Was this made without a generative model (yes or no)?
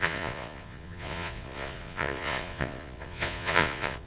no